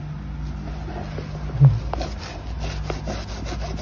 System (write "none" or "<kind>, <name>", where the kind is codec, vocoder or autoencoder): none